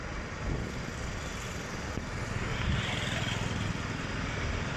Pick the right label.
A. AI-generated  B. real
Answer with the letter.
B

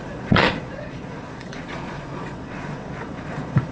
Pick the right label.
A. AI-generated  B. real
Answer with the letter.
A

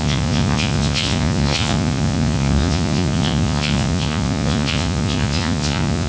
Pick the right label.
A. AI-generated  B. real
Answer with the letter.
A